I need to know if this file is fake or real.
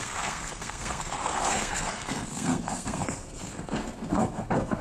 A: fake